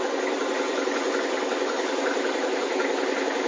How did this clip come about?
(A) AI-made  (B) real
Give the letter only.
B